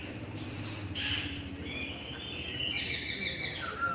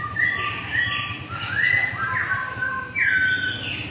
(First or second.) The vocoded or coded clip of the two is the first